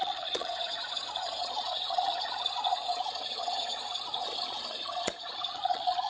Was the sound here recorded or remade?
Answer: remade